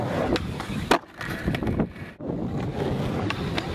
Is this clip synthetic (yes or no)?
no